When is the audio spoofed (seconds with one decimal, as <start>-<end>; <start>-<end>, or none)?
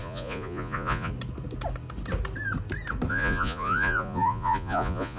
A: 0.0-1.1; 3.1-5.2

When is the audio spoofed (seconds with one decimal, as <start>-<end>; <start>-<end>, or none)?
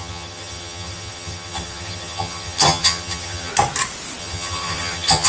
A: 0.0-3.5; 4.2-5.3